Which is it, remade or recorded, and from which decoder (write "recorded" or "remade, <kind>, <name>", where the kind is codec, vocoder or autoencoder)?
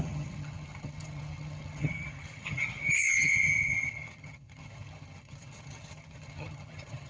remade, vocoder, HiFi-GAN